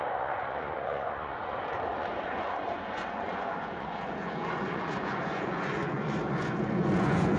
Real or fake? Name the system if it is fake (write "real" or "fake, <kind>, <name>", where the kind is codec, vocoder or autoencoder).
fake, vocoder, Vocos